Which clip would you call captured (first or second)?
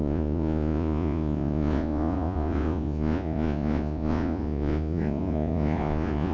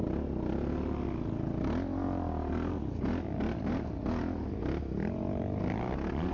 second